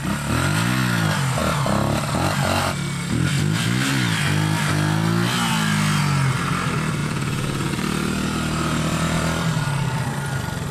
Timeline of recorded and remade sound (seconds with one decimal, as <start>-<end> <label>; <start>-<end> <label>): 0.0-7.0 recorded; 7.0-7.7 remade; 7.7-10.7 recorded